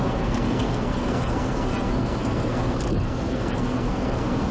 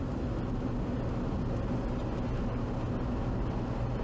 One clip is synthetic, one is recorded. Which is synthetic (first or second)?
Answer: first